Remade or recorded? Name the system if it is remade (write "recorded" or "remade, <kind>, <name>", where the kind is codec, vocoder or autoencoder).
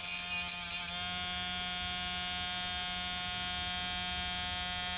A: recorded